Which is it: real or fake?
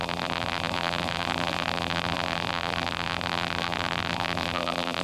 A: fake